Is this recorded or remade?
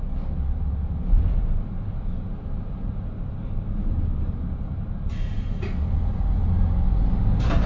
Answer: recorded